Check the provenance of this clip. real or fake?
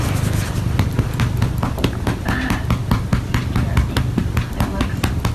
real